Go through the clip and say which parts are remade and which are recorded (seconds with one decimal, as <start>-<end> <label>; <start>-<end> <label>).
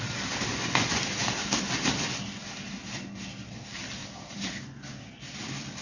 0.0-0.5 recorded; 0.5-1.0 remade; 1.0-5.8 recorded